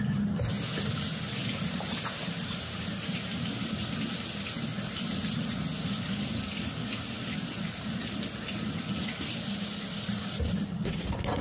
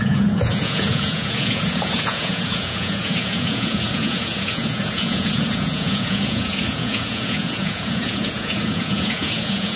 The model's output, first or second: second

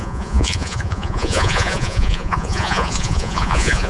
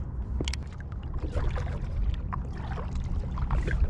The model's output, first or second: first